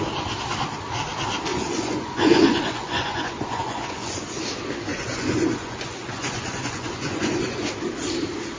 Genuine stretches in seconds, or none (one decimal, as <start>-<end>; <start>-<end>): 0.0-1.5; 4.4-4.9; 7.7-8.6